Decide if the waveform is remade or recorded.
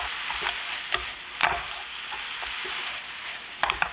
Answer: recorded